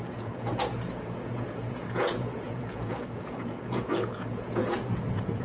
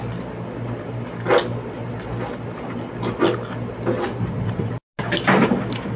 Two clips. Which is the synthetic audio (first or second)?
first